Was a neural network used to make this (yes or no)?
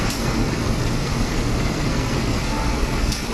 yes